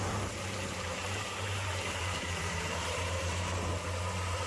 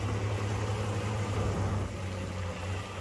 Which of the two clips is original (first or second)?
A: second